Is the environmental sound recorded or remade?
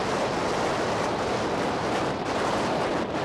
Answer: recorded